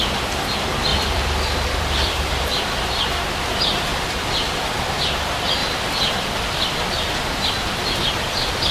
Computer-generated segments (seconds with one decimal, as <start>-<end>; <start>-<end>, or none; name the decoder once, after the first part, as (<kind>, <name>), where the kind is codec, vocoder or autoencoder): 0.9-3.0 (vocoder, BigVGAN v2); 3.9-4.8; 5.6-8.7